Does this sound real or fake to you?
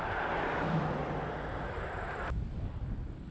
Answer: real